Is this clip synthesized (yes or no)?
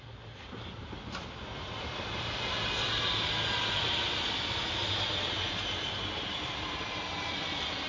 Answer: no